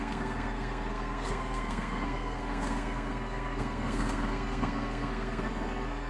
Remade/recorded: remade